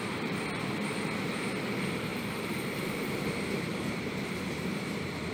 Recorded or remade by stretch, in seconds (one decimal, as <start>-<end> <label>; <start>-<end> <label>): 0.0-5.3 remade